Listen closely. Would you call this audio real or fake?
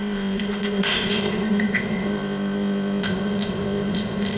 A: fake